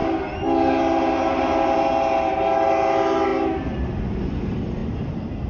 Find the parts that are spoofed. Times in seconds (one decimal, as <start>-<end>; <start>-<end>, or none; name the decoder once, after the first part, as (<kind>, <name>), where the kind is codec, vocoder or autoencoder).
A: none